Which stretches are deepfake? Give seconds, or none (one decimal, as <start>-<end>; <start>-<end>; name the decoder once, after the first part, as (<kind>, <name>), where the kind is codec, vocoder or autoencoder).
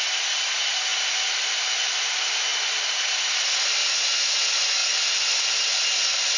none